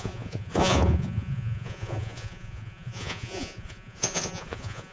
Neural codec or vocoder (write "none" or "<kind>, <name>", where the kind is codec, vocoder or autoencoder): vocoder, Vocos